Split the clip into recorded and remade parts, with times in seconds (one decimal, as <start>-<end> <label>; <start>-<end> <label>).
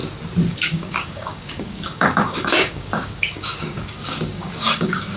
0.0-0.5 recorded; 0.5-5.2 remade